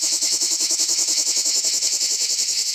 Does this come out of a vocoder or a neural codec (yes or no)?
yes